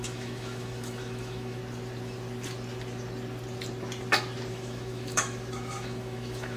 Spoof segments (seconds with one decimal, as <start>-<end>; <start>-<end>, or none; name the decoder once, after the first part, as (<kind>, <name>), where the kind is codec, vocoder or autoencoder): 0.0-1.6 (autoencoder, DAC-VAE); 4.5-6.6